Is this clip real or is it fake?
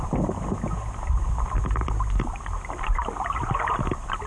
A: real